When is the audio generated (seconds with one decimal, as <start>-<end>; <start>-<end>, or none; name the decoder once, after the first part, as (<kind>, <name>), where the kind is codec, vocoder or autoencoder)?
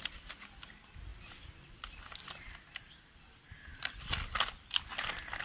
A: none